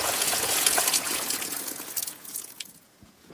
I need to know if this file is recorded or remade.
remade